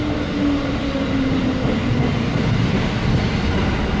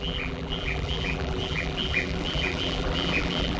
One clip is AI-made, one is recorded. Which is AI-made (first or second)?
second